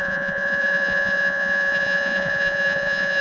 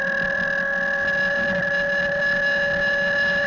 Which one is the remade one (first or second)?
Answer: first